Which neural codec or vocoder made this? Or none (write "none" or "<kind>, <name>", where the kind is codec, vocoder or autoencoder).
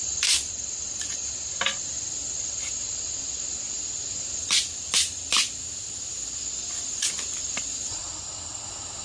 none